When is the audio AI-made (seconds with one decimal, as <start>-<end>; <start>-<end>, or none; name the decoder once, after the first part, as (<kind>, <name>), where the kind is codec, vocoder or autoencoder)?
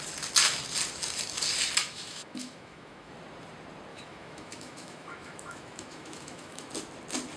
1.8-3.1 (autoencoder, DAC-VAE); 3.9-6.7